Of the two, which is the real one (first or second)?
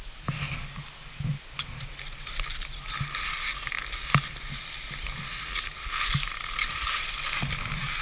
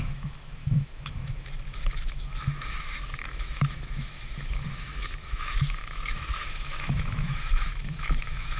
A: first